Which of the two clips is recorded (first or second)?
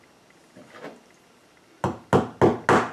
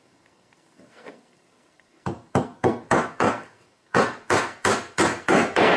first